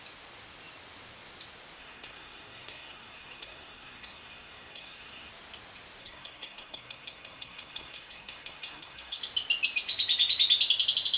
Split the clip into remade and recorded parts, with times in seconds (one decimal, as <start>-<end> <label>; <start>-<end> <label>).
0.0-1.8 recorded; 1.8-5.3 remade; 5.3-6.0 recorded; 6.0-9.2 remade; 9.2-11.2 recorded